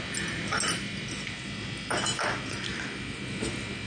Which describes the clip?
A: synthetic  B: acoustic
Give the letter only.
B